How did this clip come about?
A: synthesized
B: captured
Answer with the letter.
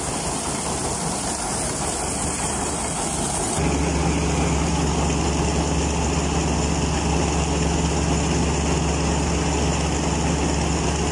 B